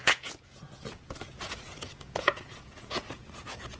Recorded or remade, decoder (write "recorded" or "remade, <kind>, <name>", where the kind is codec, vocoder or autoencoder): remade, vocoder, Vocos